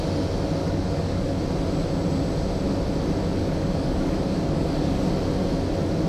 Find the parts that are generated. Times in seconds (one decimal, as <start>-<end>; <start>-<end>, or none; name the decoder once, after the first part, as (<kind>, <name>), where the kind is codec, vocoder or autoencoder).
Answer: 0.6-1.4 (codec, DAC); 3.4-5.1